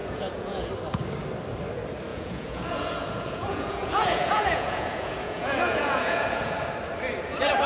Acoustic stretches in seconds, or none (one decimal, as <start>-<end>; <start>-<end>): 0.7-2.1; 6.7-7.7